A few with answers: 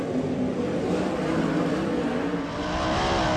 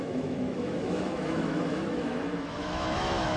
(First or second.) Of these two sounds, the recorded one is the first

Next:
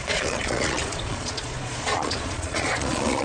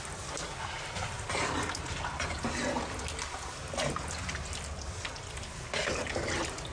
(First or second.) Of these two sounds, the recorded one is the second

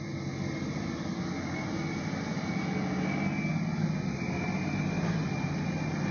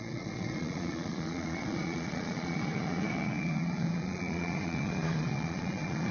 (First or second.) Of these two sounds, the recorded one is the first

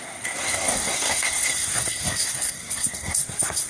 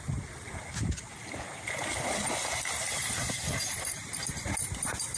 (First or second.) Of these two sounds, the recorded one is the second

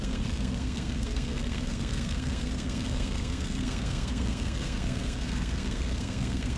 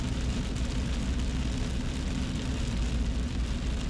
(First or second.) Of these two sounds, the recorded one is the second